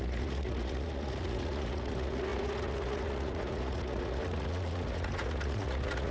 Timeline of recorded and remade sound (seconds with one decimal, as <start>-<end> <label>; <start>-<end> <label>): 0.0-6.1 remade